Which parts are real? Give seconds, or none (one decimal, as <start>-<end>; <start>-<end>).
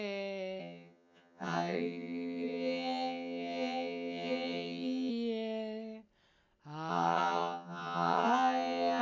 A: 0.0-0.6; 5.1-6.9